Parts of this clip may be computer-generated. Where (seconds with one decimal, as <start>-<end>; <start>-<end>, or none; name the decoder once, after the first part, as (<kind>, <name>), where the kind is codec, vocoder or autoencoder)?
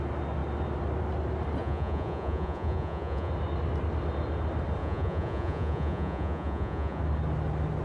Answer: 1.6-3.3 (vocoder, Vocos); 4.8-7.0